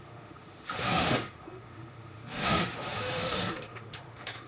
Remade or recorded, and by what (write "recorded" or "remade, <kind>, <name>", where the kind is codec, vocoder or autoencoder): remade, autoencoder, DAC-VAE